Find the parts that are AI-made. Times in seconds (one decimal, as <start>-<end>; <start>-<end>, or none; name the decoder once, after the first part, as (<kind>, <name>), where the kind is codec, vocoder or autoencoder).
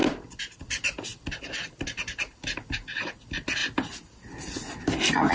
none